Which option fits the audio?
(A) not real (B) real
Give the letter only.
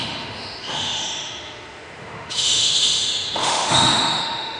A